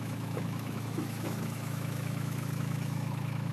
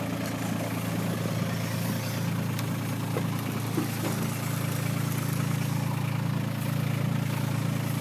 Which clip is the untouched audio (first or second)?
second